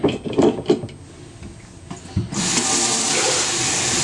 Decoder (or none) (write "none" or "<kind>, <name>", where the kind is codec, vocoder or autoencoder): none